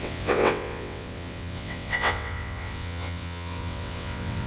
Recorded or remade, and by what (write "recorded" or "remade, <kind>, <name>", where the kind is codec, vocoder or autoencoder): remade, vocoder, WaveNeXt